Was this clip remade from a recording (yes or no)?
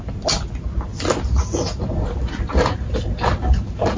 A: no